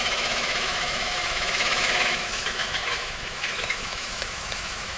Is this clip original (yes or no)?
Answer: no